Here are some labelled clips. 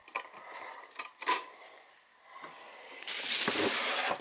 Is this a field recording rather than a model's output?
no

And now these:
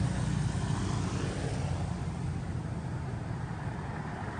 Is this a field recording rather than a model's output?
yes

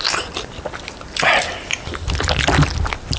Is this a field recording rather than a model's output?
yes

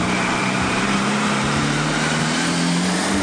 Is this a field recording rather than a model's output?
no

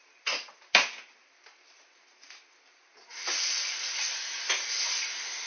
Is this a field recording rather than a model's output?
yes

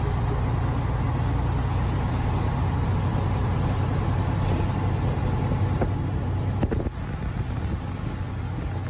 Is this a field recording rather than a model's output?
yes